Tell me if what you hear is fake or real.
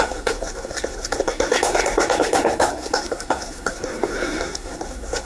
fake